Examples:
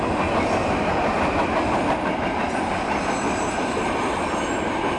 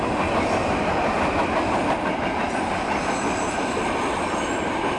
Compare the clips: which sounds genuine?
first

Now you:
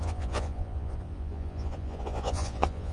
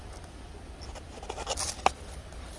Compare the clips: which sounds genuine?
second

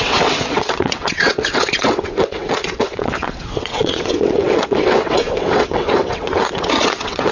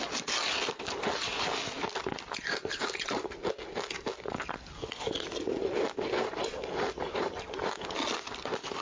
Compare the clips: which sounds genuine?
second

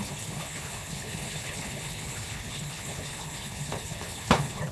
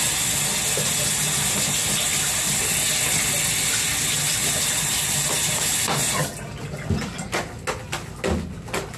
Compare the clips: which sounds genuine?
second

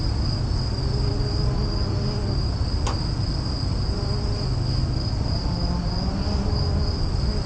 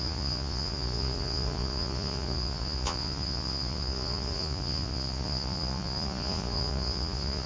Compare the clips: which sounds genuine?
first